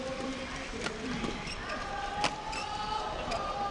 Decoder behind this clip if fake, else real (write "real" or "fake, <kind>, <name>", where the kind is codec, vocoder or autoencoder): fake, vocoder, BigVGAN v2